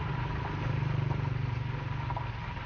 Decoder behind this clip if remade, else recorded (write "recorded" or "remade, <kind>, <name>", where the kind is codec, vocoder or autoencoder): recorded